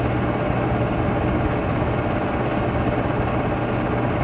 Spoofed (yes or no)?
no